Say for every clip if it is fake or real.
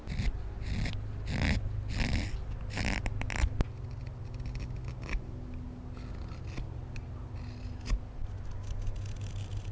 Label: real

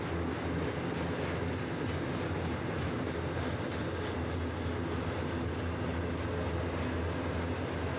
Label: real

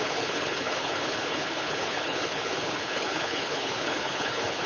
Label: fake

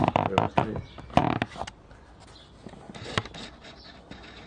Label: real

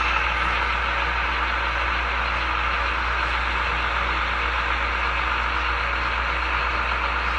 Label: real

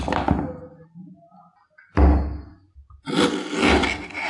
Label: real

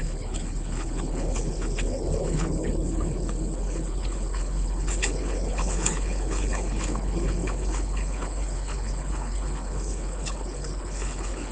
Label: fake